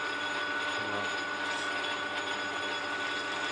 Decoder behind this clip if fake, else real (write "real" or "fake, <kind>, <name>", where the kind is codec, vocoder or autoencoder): real